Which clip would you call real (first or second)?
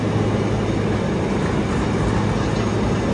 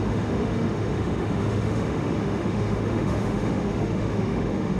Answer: first